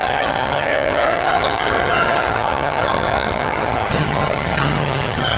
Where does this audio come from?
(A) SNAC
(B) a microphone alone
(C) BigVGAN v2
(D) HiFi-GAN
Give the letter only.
D